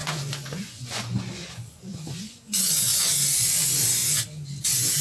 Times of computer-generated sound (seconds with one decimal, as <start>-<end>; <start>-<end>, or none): 0.0-4.0; 4.6-5.0